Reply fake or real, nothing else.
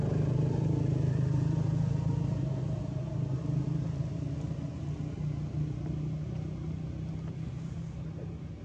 real